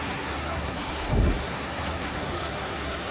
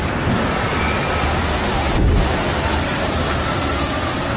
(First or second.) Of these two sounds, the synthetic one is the first